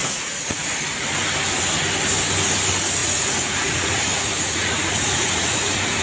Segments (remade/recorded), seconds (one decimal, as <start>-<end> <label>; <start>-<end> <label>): 0.0-0.7 remade; 0.7-3.0 recorded; 3.0-6.0 remade